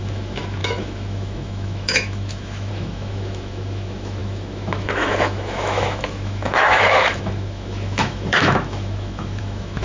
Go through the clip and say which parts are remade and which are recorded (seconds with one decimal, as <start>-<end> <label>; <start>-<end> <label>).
0.0-9.8 remade